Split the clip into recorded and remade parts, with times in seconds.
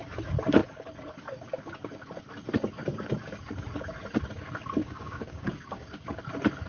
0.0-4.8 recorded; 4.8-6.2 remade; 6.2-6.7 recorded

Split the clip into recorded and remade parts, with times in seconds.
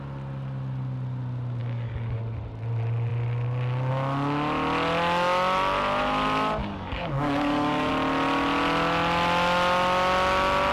0.0-1.6 recorded; 1.6-2.2 remade; 2.2-6.6 recorded; 6.6-7.9 remade; 7.9-10.7 recorded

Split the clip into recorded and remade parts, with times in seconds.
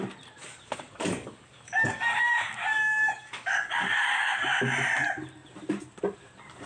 0.0-0.4 recorded; 0.4-4.4 remade; 4.4-6.7 recorded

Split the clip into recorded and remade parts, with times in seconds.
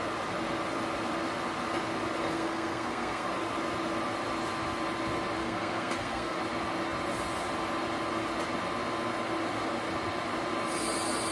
0.0-2.2 recorded; 2.2-3.3 remade; 3.3-5.4 recorded; 5.4-6.4 remade; 6.4-11.3 recorded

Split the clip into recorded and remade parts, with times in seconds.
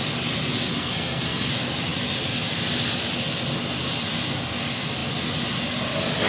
0.0-0.7 recorded; 0.7-1.5 remade; 1.5-6.3 recorded